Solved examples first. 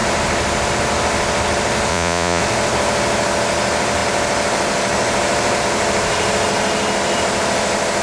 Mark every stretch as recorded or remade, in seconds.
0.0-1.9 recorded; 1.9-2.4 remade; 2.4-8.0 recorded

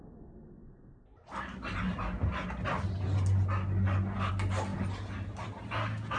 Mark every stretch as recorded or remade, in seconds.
0.0-6.2 recorded

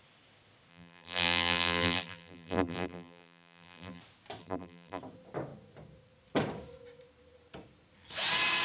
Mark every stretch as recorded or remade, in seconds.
0.0-0.7 recorded; 0.7-4.0 remade; 4.0-4.4 recorded; 4.4-5.0 remade; 5.0-8.6 recorded

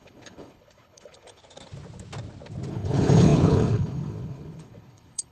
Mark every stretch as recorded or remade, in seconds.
0.0-1.4 remade; 1.4-2.7 recorded; 2.7-5.3 remade